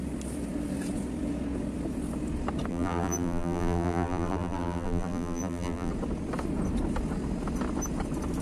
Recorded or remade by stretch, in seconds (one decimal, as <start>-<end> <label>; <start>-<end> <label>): 0.0-2.7 recorded; 2.7-5.9 remade; 5.9-8.4 recorded